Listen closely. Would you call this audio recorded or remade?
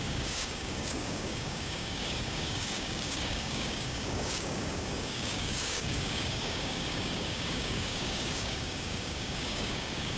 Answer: remade